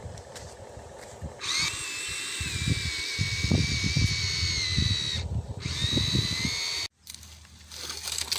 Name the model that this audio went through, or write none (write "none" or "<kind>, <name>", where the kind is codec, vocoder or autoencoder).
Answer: none